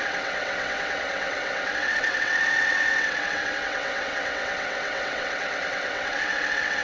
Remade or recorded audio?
remade